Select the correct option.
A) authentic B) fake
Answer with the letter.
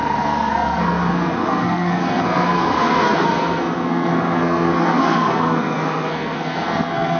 B